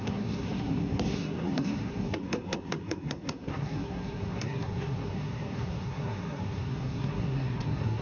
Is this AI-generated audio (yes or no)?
yes